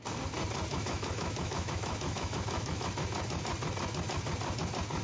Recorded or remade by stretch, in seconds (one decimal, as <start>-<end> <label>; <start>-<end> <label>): 0.0-0.7 recorded; 0.7-2.9 remade; 2.9-5.0 recorded